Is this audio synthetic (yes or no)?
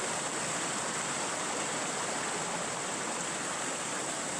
no